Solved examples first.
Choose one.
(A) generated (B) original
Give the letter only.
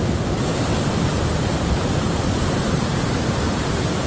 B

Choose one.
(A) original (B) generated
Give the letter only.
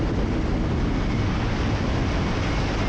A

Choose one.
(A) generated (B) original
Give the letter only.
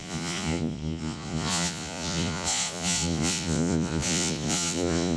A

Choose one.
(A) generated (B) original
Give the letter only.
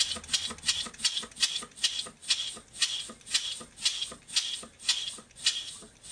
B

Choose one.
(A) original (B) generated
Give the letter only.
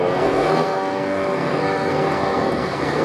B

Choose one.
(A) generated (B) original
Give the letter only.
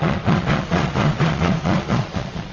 A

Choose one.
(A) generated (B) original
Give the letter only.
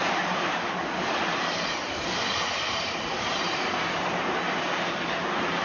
A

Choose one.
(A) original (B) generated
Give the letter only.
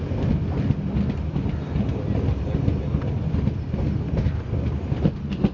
A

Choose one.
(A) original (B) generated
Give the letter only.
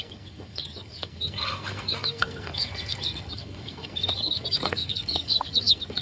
B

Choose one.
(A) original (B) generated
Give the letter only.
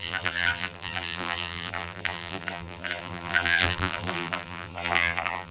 B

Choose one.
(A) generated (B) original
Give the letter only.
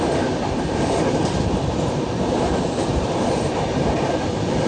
A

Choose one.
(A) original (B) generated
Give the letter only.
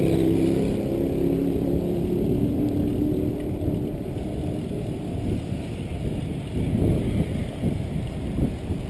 A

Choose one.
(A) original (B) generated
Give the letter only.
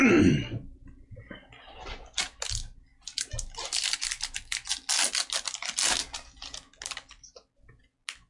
A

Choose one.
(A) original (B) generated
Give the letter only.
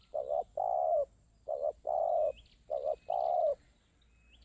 A